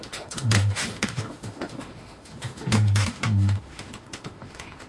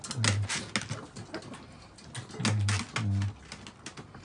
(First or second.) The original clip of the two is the second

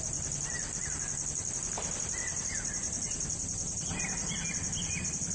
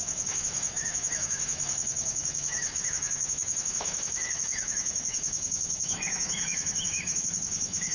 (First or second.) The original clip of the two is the first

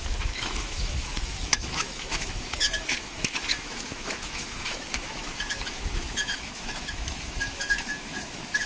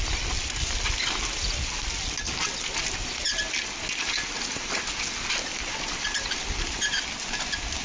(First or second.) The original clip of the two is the second